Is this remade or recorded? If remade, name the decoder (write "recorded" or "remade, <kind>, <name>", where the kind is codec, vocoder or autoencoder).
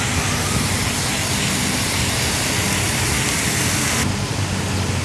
recorded